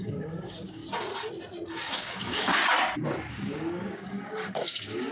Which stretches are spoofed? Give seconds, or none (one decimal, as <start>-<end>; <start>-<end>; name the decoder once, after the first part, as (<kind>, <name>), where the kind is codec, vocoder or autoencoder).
0.0-0.8 (codec, DAC); 1.9-2.5; 3.3-5.1

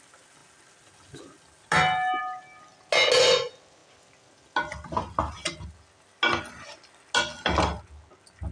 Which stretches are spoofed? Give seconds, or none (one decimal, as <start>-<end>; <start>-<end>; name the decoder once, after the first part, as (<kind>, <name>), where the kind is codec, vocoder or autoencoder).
none

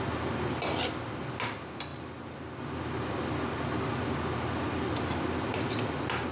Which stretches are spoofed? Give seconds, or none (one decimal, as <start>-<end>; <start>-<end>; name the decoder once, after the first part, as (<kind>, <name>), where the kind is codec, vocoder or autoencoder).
none

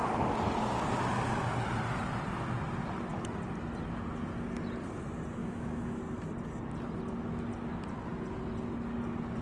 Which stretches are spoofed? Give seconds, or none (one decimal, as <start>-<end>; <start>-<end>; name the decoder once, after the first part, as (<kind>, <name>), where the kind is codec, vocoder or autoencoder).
5.4-6.0 (autoencoder, DAC-VAE)

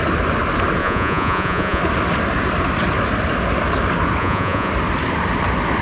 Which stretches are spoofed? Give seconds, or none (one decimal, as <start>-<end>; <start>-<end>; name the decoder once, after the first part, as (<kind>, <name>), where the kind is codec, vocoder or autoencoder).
0.8-1.8 (vocoder, Vocos); 4.2-4.7

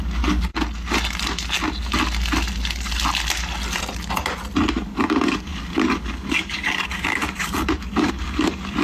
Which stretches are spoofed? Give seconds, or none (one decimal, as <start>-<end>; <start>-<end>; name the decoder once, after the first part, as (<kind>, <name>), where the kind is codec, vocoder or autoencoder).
0.0-0.5 (codec, DAC); 4.7-8.8

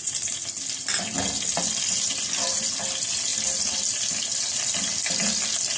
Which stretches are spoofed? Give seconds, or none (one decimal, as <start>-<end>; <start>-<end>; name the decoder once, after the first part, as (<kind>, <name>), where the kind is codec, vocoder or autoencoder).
none